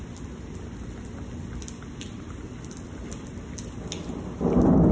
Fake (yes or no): no